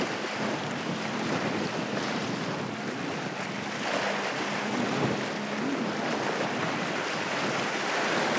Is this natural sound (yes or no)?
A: yes